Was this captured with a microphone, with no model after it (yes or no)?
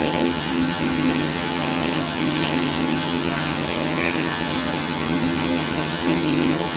no